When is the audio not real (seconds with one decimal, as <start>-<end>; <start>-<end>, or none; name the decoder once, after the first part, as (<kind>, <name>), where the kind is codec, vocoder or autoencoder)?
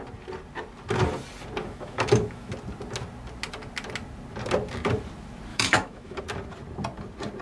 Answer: 1.6-2.5 (autoencoder, DAC-VAE); 5.5-6.2